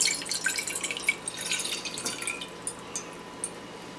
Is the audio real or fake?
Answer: real